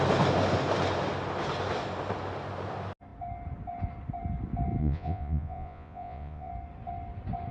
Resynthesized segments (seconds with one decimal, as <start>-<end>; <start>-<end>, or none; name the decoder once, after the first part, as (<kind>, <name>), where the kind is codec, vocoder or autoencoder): 4.8-6.5 (vocoder, Vocos)